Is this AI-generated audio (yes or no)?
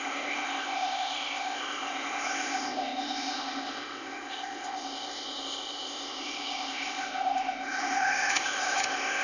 yes